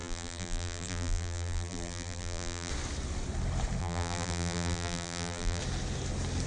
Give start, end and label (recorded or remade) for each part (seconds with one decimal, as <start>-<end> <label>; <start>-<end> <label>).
0.0-2.7 remade; 2.7-3.8 recorded; 3.8-5.6 remade; 5.6-6.5 recorded